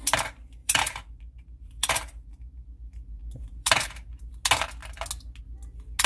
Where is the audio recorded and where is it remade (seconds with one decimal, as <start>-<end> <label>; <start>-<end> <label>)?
0.0-0.6 recorded; 0.6-4.3 remade; 4.3-6.1 recorded